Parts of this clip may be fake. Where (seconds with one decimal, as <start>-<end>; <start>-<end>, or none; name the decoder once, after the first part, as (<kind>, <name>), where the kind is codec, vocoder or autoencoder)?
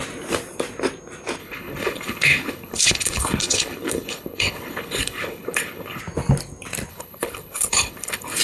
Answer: 1.4-6.0 (codec, HILCodec); 6.9-8.4